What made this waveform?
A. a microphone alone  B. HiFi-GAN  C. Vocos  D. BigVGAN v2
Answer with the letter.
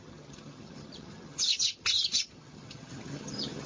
B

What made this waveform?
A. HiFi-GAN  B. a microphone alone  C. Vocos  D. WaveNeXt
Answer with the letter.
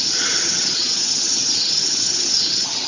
A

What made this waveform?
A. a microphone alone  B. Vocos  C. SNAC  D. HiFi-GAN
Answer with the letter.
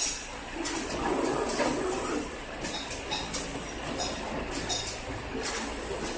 A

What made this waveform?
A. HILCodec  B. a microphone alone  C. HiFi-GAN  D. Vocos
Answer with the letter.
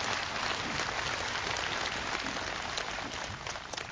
B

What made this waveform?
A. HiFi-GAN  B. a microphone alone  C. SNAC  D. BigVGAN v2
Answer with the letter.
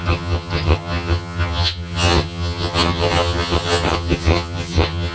A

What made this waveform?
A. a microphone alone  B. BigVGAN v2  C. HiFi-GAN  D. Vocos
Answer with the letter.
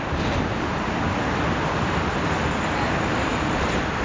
A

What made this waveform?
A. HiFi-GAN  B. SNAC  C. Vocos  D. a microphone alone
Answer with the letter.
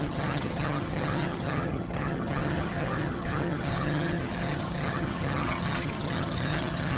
A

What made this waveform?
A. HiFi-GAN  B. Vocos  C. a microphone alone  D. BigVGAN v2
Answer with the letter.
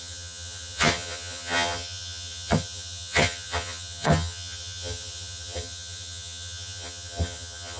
A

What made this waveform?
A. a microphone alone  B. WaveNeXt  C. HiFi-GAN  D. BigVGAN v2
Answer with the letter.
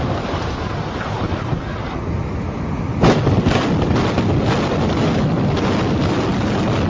A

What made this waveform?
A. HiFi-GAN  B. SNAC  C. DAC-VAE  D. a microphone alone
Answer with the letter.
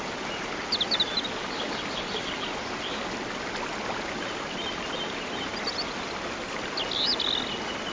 D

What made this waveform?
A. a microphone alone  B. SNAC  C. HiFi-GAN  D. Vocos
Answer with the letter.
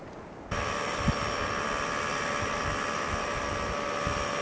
A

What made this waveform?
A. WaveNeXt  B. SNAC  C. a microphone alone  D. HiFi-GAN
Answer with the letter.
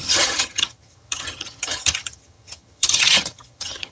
D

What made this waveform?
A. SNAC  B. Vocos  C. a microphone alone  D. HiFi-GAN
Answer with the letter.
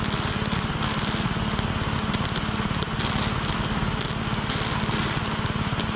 C